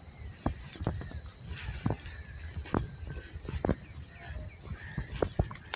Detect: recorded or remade recorded